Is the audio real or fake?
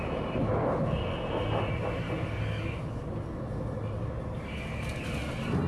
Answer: real